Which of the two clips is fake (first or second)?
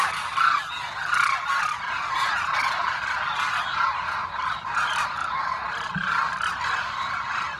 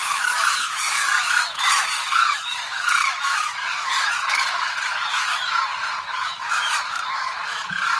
second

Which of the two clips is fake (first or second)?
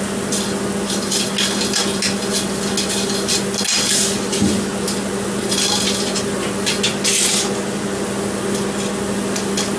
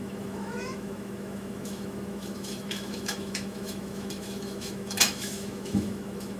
second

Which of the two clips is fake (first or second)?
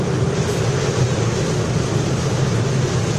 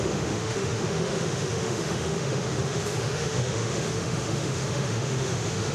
second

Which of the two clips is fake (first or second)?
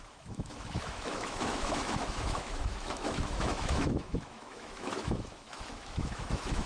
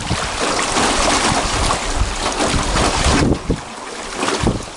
first